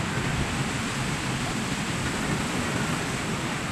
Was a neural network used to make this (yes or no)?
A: no